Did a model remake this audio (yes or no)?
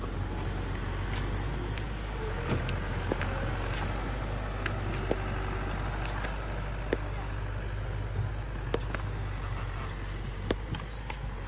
no